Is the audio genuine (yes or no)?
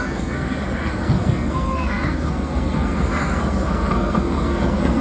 no